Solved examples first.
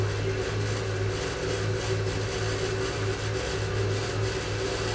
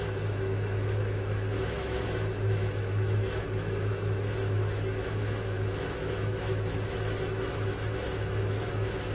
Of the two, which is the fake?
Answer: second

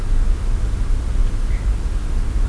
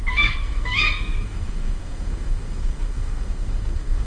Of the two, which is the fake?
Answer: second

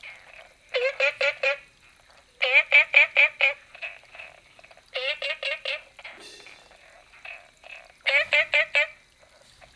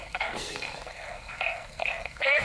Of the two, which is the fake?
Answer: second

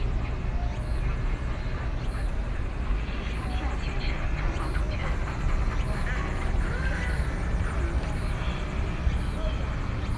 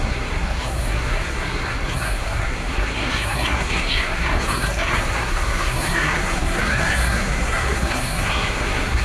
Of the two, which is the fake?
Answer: second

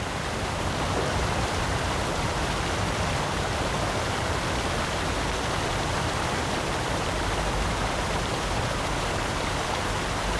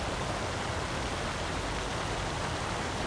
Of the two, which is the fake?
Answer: first